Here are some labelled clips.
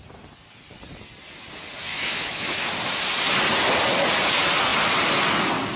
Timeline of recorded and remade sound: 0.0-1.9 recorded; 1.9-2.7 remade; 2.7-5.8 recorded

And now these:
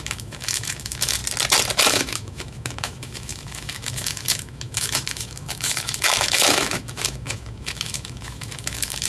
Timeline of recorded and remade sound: 0.0-1.2 remade; 1.2-1.9 recorded; 1.9-9.1 remade

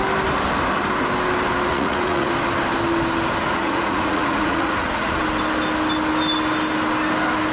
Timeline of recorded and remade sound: 0.0-1.7 recorded; 1.7-2.3 remade; 2.3-3.4 recorded; 3.4-5.2 remade; 5.2-7.5 recorded

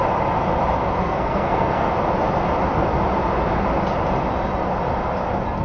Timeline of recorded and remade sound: 0.0-0.8 recorded; 0.8-1.9 remade; 1.9-5.6 recorded

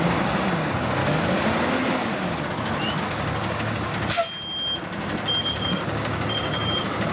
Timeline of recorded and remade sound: 0.0-1.0 remade; 1.0-3.0 recorded; 3.0-3.9 remade; 3.9-5.4 recorded; 5.4-7.1 remade

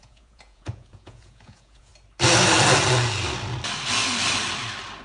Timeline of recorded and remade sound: 0.0-1.9 remade; 1.9-5.0 recorded

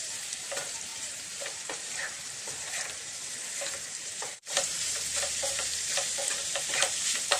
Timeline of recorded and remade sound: 0.0-3.1 remade; 3.1-4.0 recorded; 4.0-7.4 remade